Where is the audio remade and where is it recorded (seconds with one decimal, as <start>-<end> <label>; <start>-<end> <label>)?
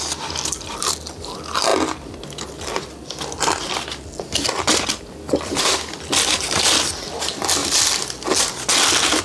0.0-9.2 recorded